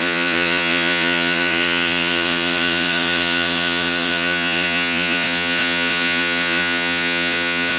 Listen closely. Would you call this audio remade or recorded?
remade